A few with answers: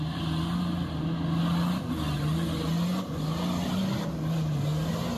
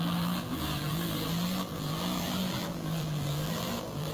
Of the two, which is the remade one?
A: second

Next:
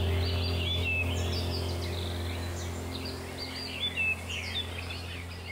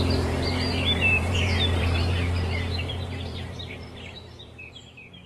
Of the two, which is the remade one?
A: second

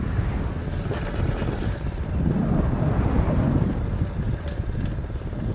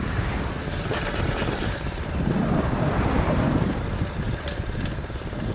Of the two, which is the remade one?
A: second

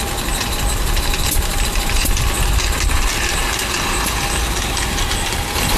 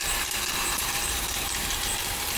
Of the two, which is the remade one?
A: second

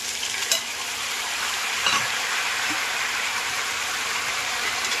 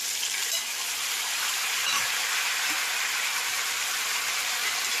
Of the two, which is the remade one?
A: first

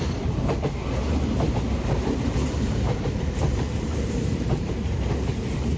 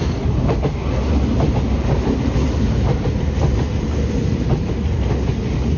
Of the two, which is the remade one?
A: first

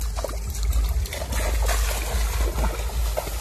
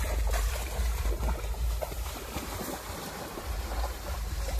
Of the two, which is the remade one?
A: second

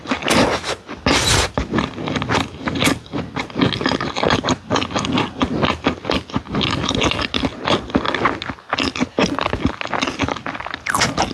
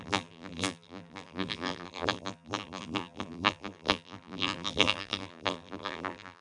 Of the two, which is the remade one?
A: second